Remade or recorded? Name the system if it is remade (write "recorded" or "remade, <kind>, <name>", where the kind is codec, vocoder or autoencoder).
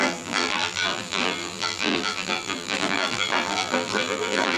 remade, vocoder, BigVGAN v2